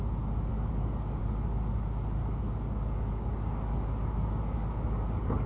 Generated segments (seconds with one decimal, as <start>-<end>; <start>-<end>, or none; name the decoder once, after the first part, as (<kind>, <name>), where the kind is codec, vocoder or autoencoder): 0.5-1.2 (codec, DAC); 2.2-5.5